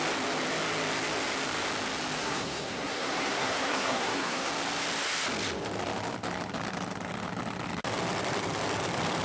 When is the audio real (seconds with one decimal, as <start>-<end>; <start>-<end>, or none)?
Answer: 0.0-2.2; 4.5-9.2